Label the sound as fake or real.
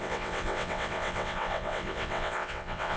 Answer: fake